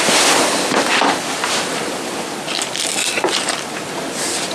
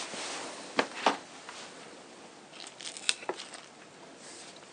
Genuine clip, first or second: second